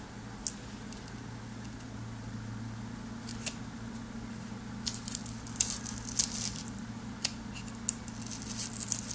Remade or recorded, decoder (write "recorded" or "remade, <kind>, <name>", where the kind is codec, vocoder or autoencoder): recorded